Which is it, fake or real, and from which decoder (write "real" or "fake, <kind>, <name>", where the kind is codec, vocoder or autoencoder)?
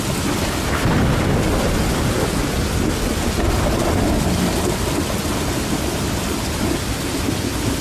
real